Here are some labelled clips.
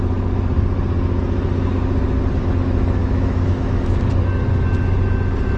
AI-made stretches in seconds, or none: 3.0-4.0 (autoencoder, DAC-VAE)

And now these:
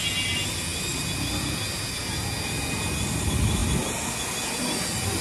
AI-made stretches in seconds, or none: none